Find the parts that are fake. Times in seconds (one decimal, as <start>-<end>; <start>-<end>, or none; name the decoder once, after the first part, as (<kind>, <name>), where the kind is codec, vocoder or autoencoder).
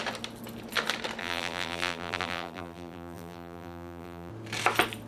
1.2-4.3 (vocoder, BigVGAN v2)